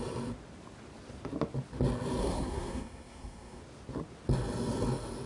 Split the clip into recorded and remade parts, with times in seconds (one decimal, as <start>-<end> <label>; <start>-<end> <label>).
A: 0.0-2.2 recorded; 2.2-3.6 remade; 3.6-5.3 recorded